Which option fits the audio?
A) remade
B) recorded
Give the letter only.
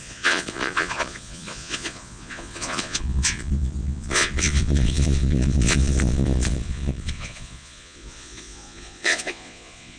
A